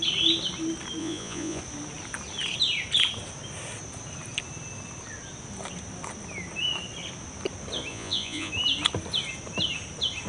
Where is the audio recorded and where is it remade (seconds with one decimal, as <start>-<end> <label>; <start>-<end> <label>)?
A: 0.0-1.0 recorded; 1.0-1.6 remade; 1.6-7.9 recorded; 7.9-8.5 remade; 8.5-10.3 recorded